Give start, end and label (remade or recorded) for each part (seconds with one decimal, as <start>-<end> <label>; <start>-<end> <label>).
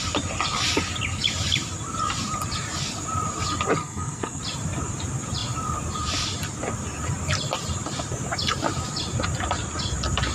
0.0-3.8 recorded; 3.8-4.4 remade; 4.4-10.3 recorded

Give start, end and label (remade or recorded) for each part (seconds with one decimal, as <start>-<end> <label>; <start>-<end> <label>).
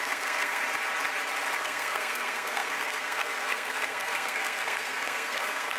0.0-0.6 remade; 0.6-1.6 recorded; 1.6-5.8 remade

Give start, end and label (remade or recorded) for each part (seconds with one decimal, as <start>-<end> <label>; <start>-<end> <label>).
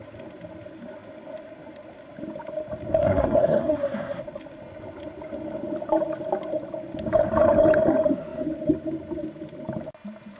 0.0-3.0 recorded; 3.0-4.2 remade; 4.2-10.4 recorded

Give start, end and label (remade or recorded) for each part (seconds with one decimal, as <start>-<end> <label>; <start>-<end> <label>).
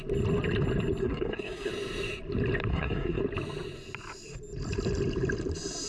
0.0-1.0 recorded; 1.0-1.7 remade; 1.7-2.7 recorded; 2.7-3.2 remade; 3.2-5.9 recorded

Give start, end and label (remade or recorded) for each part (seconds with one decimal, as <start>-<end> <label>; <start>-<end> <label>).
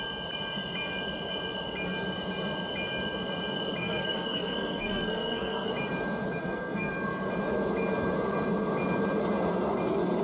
0.0-3.8 recorded; 3.8-5.7 remade; 5.7-6.4 recorded; 6.4-6.9 remade; 6.9-10.2 recorded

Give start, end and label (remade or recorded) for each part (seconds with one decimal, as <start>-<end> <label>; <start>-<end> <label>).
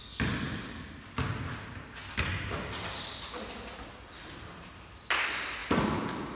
0.0-6.4 recorded